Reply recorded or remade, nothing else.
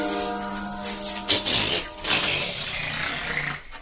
recorded